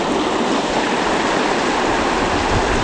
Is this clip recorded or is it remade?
recorded